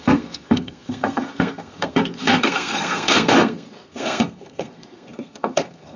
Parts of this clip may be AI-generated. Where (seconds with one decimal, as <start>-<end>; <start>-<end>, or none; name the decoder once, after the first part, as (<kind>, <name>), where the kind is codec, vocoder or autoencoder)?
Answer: 0.0-6.0 (codec, SNAC)